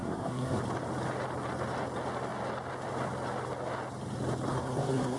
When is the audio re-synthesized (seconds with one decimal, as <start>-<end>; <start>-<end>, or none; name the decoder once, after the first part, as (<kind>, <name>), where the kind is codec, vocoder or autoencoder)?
0.0-0.6 (codec, SNAC); 4.5-5.2